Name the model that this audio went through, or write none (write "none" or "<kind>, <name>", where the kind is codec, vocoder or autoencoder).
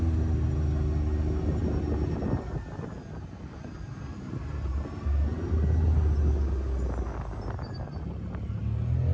none